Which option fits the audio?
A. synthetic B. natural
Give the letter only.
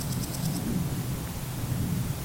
B